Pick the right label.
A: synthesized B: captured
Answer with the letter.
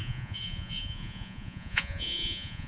A